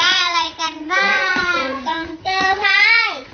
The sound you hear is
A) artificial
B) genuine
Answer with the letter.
A